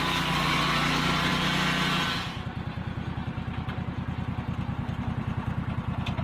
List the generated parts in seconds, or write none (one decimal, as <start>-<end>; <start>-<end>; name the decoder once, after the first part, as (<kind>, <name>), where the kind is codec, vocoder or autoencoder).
none